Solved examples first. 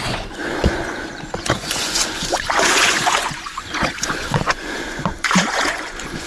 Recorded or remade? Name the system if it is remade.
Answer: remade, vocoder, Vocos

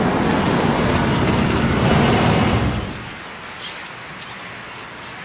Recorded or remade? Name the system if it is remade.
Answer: recorded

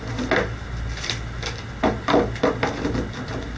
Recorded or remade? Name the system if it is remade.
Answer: recorded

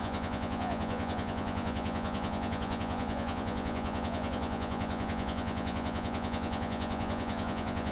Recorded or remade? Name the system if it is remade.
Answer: remade, vocoder, Vocos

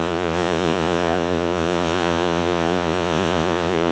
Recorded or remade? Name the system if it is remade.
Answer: remade, vocoder, Vocos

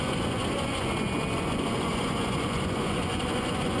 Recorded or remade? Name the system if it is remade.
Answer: remade, vocoder, Vocos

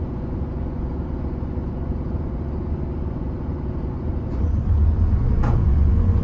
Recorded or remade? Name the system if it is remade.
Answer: remade, vocoder, Vocos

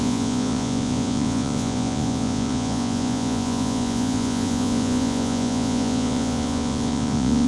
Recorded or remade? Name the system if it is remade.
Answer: remade, vocoder, Vocos